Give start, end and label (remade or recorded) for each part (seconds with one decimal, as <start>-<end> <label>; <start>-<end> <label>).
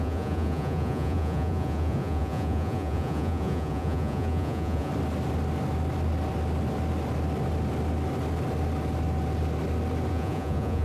0.0-4.9 remade; 4.9-10.1 recorded; 10.1-10.8 remade